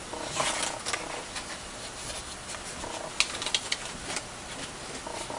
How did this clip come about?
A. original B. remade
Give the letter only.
A